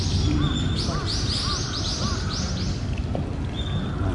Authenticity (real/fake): real